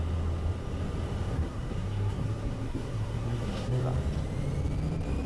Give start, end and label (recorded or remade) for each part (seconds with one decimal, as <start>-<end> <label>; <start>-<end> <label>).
0.0-1.3 recorded; 1.3-3.8 remade; 3.8-5.3 recorded